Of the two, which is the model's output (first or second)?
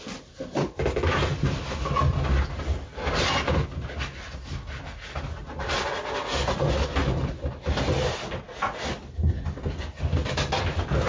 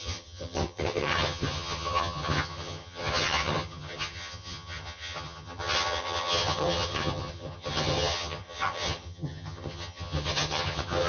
second